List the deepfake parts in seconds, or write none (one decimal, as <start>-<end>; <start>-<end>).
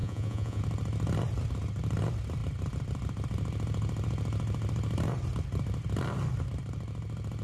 0.0-0.6